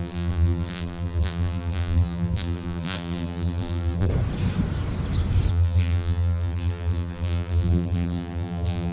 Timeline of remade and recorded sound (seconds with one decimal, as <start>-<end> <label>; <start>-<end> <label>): 0.0-4.1 remade; 4.1-5.5 recorded; 5.5-8.9 remade